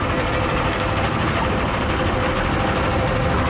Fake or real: real